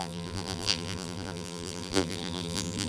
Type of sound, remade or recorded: remade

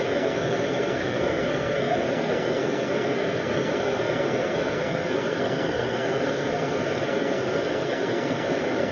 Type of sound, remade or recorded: remade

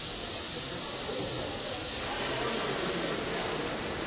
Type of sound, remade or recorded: recorded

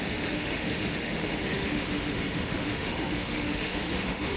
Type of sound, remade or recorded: remade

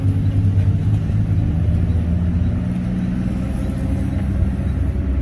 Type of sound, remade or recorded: recorded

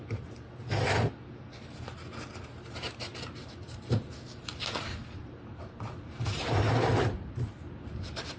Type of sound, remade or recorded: remade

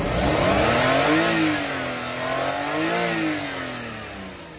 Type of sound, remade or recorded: recorded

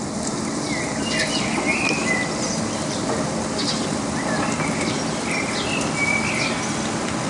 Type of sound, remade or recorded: recorded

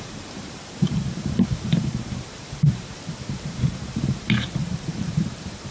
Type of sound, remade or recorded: remade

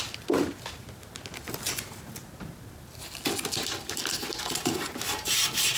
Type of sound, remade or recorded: recorded